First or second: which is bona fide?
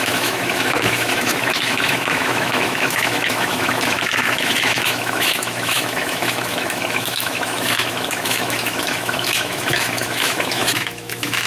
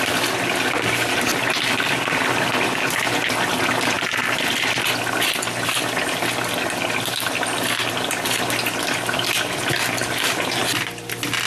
second